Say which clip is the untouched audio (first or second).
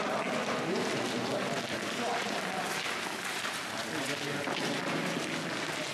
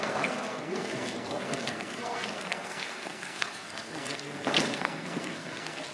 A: first